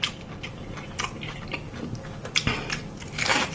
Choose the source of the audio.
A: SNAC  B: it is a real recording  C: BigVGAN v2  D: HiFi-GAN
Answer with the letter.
B